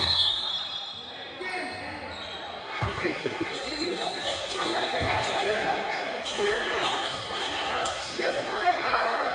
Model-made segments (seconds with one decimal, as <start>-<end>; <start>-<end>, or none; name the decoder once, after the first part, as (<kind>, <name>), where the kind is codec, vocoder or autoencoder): 0.0-0.5 (codec, SNAC); 2.6-9.3